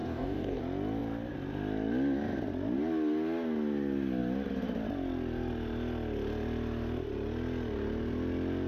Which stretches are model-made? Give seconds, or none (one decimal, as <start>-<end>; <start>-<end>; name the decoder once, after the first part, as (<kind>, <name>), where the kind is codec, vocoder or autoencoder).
0.0-0.6 (codec, DAC)